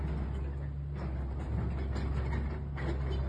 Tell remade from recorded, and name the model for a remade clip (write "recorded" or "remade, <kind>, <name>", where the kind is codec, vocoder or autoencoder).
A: recorded